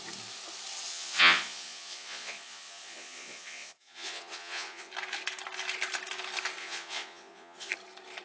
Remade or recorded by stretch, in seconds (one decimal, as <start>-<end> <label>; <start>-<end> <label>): 0.0-0.9 recorded; 0.9-4.9 remade; 4.9-6.6 recorded; 6.6-7.7 remade; 7.7-8.2 recorded